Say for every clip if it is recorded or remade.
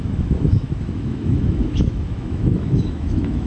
remade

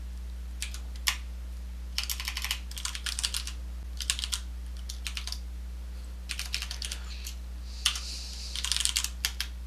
recorded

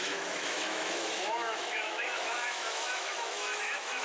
remade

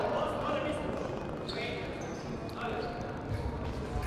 recorded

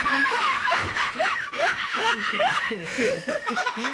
remade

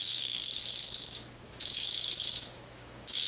remade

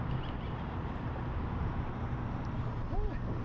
recorded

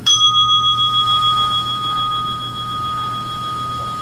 remade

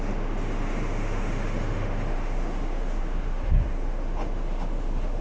remade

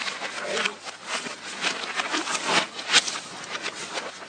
recorded